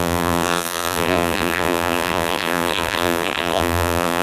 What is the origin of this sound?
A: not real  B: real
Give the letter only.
A